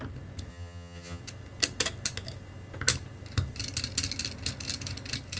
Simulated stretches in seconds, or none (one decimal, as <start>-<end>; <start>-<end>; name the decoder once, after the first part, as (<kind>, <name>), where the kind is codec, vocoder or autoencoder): 0.5-1.2 (vocoder, HiFi-GAN)